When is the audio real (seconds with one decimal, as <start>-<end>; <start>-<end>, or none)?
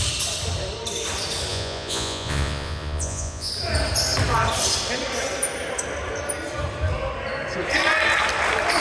0.0-1.5; 3.5-8.8